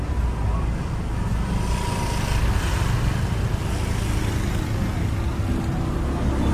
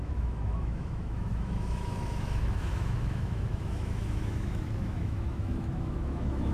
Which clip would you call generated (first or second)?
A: second